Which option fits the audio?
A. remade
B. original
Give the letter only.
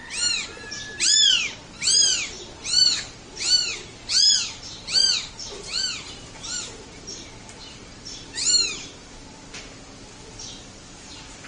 A